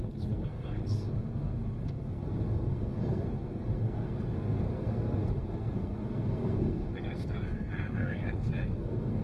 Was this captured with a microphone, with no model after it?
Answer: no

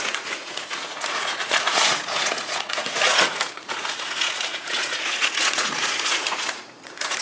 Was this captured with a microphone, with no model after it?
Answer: no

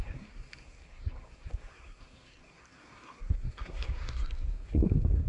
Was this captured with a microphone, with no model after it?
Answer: no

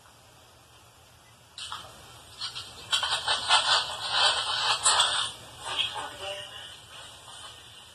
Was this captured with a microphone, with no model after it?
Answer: yes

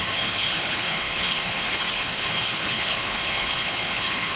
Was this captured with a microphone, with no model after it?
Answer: no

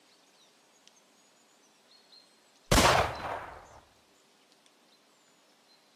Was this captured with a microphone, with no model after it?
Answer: yes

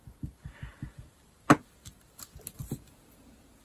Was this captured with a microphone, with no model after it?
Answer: yes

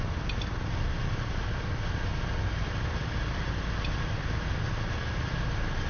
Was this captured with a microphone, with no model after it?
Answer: yes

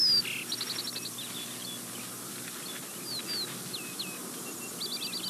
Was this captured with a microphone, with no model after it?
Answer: yes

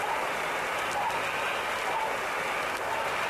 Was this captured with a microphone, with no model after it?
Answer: yes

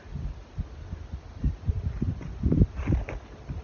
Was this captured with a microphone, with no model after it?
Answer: yes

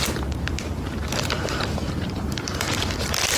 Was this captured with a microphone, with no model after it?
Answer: no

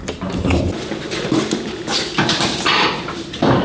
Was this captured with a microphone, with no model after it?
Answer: yes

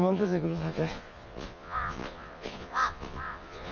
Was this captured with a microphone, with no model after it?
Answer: no